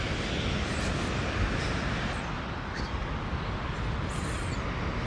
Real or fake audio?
real